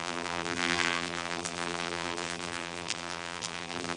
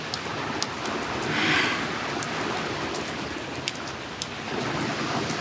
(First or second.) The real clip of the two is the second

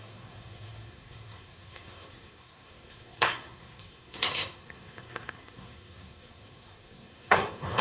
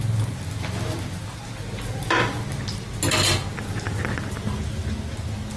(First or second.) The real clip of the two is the second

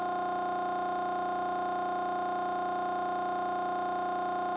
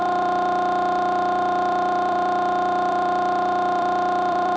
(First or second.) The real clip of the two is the first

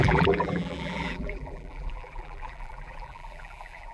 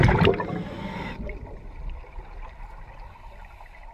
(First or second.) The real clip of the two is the second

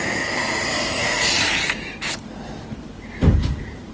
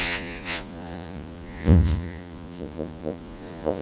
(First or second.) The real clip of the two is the first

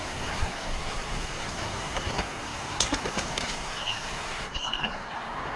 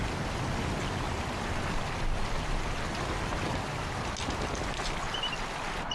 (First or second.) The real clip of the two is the second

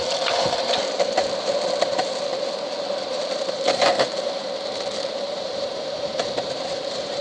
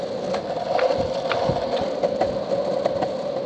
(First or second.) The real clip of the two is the second